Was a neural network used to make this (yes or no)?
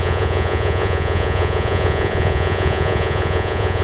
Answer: yes